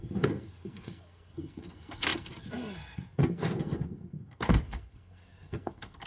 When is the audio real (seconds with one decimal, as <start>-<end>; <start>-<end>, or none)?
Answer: none